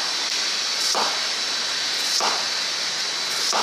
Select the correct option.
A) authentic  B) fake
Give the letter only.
A